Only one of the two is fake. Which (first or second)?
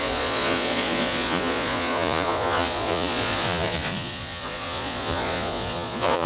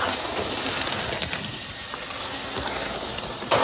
first